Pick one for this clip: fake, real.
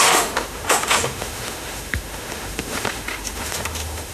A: fake